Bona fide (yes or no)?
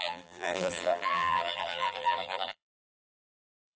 no